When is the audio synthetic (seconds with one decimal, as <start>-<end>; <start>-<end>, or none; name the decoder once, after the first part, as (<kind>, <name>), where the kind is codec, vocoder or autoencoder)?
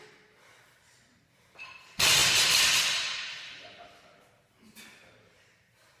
none